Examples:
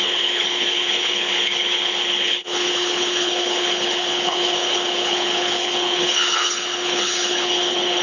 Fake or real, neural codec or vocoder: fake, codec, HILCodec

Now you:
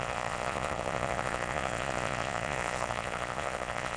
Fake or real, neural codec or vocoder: fake, vocoder, Vocos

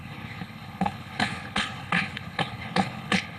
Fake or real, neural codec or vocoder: fake, codec, HILCodec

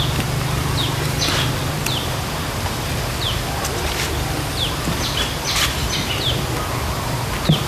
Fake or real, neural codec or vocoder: real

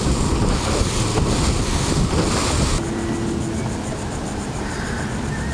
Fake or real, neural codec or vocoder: real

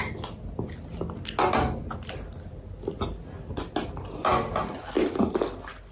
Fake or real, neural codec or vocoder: real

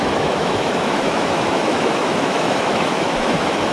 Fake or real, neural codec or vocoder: fake, autoencoder, DAC-VAE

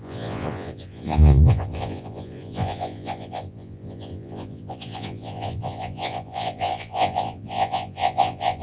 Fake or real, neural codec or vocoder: fake, vocoder, Vocos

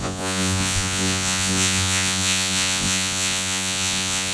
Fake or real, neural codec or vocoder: fake, vocoder, Vocos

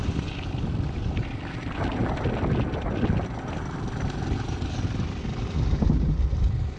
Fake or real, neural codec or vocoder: real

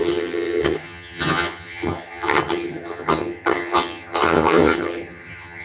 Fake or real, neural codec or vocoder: fake, vocoder, HiFi-GAN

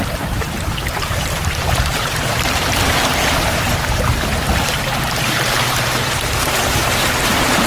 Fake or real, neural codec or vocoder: fake, vocoder, BigVGAN v2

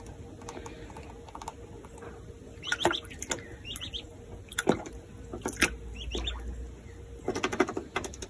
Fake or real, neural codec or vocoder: real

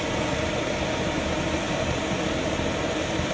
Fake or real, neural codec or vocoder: real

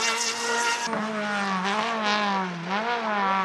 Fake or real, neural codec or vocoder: real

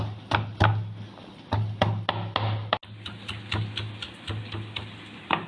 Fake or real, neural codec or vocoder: real